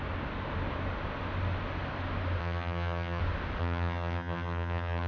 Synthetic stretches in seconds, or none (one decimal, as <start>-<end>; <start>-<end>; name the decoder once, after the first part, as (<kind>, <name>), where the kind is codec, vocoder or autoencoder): 2.4-3.2 (vocoder, HiFi-GAN); 3.6-5.1